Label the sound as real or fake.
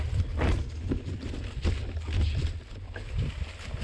real